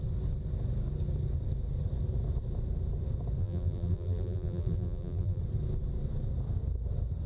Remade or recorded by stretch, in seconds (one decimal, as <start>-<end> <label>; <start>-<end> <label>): 0.0-3.4 recorded; 3.4-5.4 remade; 5.4-7.3 recorded